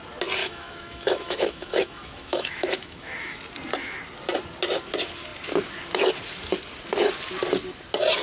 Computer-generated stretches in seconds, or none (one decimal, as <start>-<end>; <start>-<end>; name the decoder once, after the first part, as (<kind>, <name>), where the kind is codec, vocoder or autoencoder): 0.4-3.4 (autoencoder, DAC-VAE)